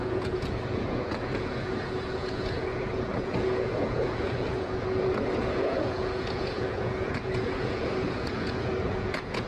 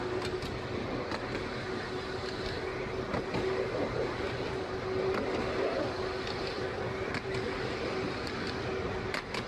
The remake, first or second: first